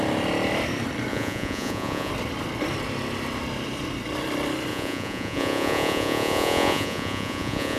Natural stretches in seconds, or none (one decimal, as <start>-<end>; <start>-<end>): 0.0-1.1; 2.1-4.7